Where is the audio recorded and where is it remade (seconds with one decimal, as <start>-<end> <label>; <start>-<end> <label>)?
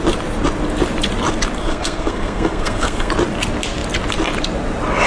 0.0-1.6 recorded; 1.6-3.1 remade; 3.1-5.1 recorded